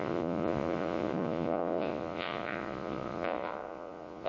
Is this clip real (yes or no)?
no